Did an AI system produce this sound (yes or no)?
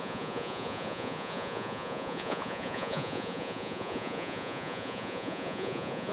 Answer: yes